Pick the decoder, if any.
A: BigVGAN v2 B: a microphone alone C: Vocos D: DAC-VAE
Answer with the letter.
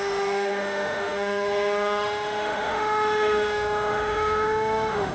D